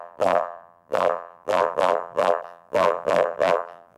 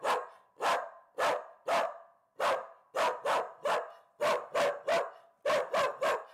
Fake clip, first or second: first